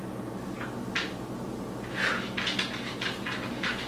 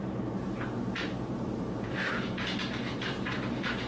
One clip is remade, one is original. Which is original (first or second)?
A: first